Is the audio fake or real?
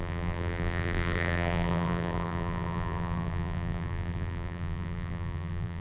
fake